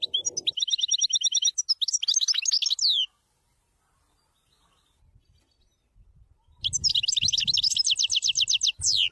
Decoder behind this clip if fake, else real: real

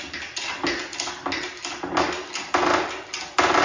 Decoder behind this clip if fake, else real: real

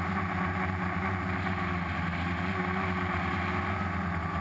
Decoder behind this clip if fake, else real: real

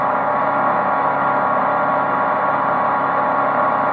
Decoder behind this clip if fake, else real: real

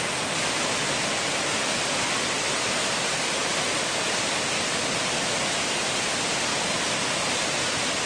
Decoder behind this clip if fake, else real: real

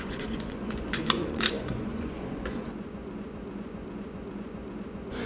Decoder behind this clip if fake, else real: fake, vocoder, Vocos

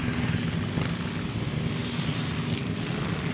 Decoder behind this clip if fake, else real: real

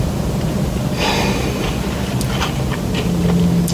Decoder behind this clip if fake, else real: real